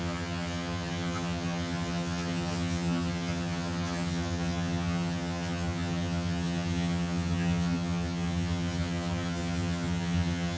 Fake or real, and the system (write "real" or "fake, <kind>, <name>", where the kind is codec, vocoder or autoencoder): fake, vocoder, HiFi-GAN